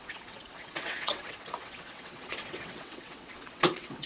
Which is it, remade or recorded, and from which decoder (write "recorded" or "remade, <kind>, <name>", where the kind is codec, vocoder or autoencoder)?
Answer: remade, vocoder, WaveNeXt